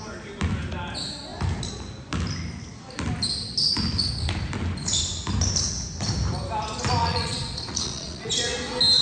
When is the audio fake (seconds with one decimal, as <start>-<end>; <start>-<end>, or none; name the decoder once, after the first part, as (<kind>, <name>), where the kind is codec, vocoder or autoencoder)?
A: 7.0-8.3 (vocoder, Vocos)